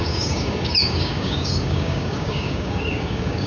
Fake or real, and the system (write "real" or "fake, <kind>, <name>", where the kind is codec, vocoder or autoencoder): fake, codec, DAC